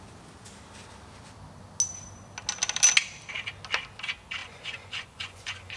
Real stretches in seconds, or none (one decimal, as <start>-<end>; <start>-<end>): 0.0-4.4